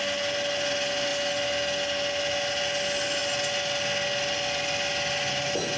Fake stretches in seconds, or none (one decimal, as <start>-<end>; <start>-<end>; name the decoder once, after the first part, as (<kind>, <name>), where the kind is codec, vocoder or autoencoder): none